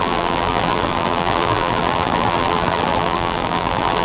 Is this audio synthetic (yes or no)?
yes